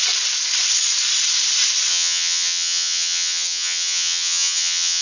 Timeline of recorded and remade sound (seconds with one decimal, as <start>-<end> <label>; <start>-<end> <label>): 0.0-1.9 recorded; 1.9-5.0 remade